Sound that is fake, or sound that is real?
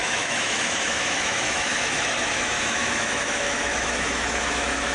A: fake